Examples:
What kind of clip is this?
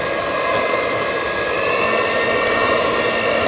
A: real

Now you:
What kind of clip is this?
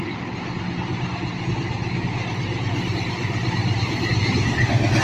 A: real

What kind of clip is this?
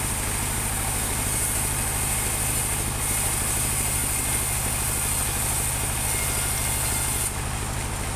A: real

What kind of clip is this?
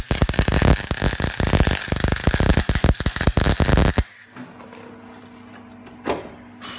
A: real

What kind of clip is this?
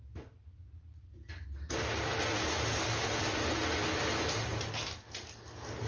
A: real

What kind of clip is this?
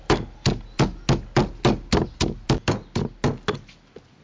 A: real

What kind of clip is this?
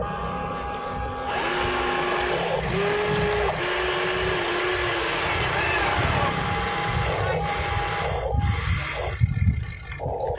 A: real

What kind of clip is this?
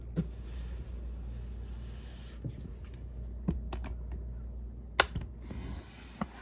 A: real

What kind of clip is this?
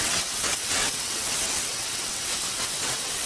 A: fake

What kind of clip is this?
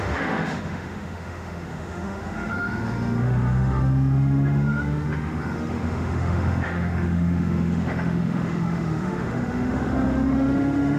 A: fake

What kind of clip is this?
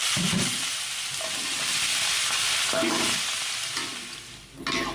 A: real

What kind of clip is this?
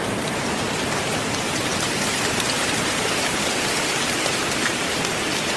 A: fake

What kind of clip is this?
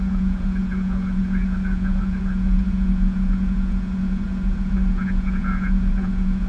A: fake